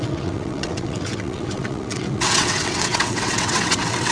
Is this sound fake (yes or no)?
yes